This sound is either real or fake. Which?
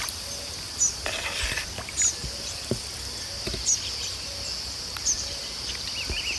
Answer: real